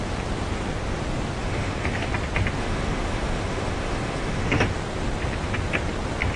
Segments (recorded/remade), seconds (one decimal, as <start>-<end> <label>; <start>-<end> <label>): 0.0-1.4 recorded; 1.4-2.1 remade; 2.1-2.6 recorded; 2.6-4.6 remade; 4.6-6.4 recorded